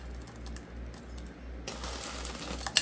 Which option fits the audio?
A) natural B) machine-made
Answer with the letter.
A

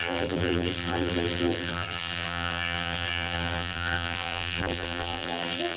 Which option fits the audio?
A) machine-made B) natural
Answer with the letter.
A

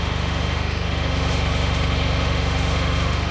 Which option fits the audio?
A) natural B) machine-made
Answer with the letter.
B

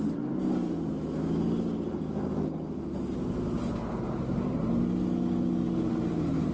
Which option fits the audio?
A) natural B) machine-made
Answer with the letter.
A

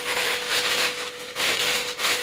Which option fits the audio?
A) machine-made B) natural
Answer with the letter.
A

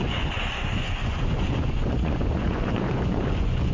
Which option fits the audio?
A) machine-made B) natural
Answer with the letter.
A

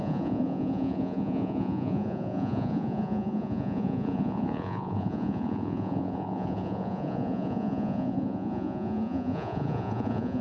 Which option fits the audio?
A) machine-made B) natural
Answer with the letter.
A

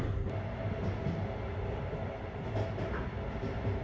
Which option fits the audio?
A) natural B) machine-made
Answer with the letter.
A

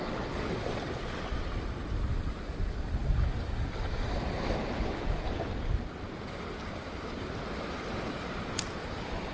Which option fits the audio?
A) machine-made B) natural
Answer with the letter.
B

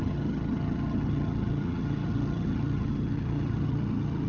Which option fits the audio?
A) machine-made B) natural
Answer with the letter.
A